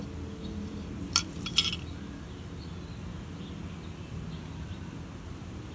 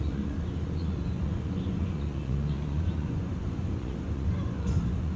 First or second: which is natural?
first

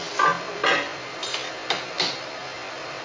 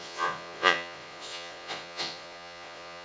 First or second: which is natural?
first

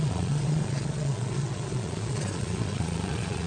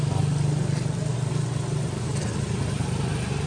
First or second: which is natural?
second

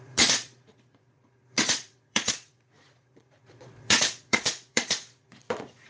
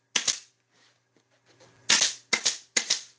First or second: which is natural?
second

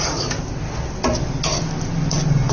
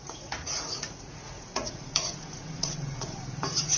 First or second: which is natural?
first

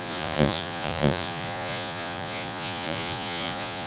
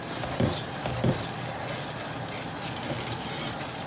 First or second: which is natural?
second